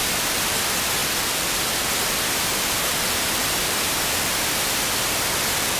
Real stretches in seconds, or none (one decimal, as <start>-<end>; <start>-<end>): 0.0-1.0; 4.5-5.8